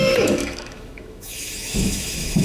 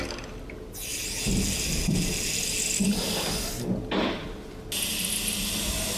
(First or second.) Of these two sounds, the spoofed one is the first